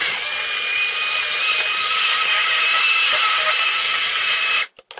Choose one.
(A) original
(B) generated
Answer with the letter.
A